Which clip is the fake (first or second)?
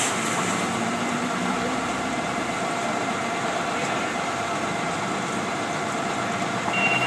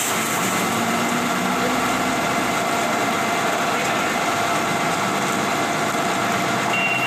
first